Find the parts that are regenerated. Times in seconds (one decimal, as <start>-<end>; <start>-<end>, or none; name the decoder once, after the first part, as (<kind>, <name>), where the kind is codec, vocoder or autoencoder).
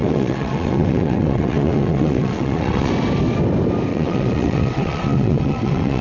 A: 0.0-2.9 (vocoder, WaveNeXt); 3.9-6.0